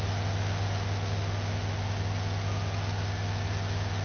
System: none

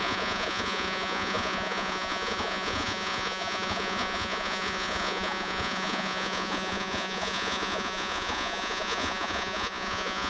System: vocoder, Vocos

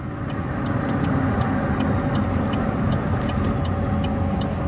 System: none